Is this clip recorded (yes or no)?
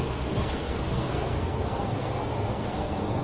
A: no